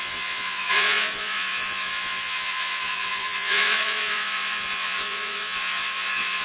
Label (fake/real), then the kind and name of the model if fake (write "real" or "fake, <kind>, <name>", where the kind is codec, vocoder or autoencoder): fake, vocoder, Vocos